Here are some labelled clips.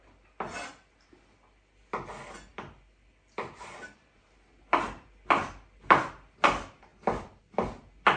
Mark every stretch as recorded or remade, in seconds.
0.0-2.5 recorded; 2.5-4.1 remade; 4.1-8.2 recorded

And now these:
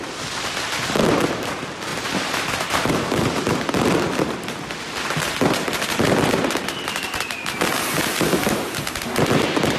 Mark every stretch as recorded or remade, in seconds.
0.0-1.9 recorded; 1.9-3.6 remade; 3.6-9.8 recorded

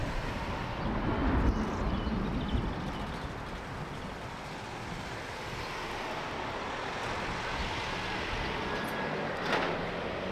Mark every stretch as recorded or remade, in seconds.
0.0-10.3 recorded

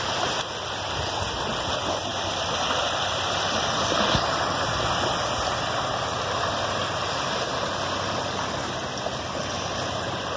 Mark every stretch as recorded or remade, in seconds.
0.0-10.4 recorded

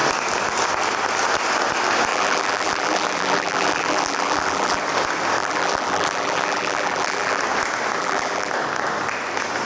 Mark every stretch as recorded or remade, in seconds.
0.0-2.1 recorded; 2.1-4.8 remade; 4.8-5.4 recorded; 5.4-7.4 remade; 7.4-8.0 recorded; 8.0-8.5 remade; 8.5-9.6 recorded

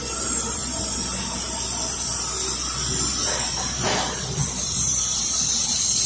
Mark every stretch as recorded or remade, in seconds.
0.0-0.6 remade; 0.6-4.3 recorded; 4.3-6.1 remade

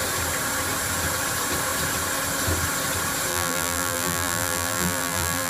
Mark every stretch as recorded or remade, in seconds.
0.0-3.3 recorded; 3.3-5.5 remade

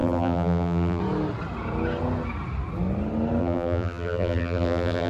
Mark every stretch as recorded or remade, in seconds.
0.0-1.0 remade; 1.0-3.4 recorded; 3.4-5.1 remade